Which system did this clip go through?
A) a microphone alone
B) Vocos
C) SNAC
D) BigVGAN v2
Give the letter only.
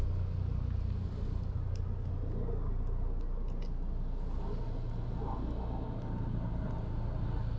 A